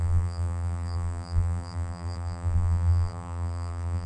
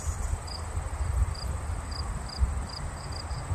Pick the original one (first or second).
second